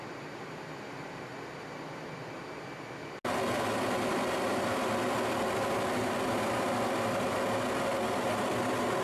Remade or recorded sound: recorded